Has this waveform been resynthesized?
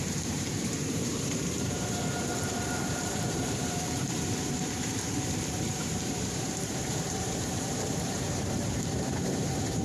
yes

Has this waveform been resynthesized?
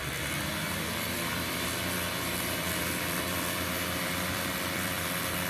yes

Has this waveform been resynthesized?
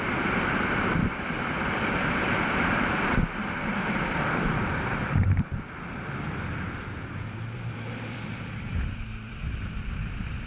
yes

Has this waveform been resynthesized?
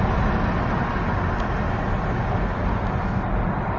no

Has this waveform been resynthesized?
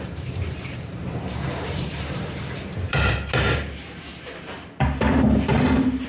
yes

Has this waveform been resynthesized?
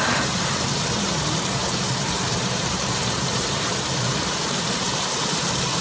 yes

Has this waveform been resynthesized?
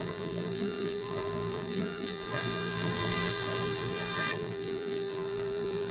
yes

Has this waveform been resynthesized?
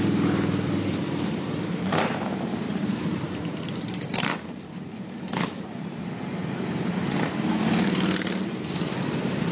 yes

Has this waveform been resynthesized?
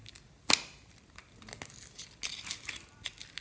no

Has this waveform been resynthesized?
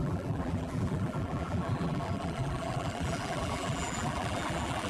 yes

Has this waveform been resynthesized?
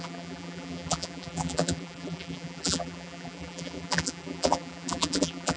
yes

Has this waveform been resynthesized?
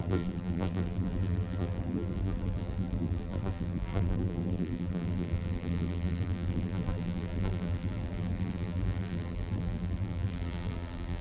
yes